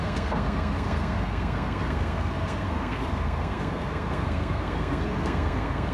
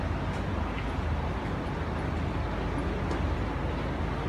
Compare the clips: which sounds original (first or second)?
second